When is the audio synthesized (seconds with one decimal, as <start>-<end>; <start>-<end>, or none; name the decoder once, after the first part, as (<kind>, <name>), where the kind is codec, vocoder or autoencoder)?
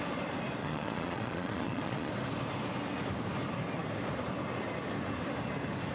0.6-2.1 (vocoder, Vocos)